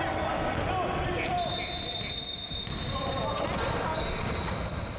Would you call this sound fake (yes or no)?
no